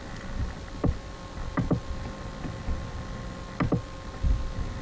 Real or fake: real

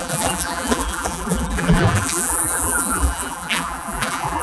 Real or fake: fake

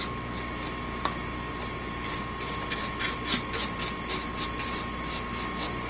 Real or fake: real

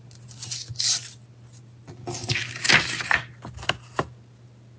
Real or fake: real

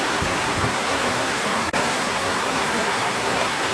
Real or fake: fake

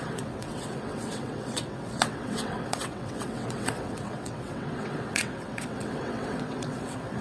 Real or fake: fake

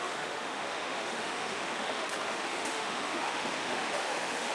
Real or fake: fake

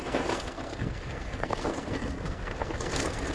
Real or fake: fake